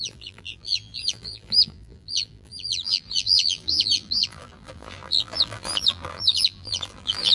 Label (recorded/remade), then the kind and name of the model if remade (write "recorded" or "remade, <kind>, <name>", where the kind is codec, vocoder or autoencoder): remade, vocoder, BigVGAN v2